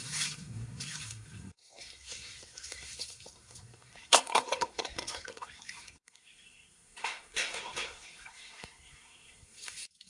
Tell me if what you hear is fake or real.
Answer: fake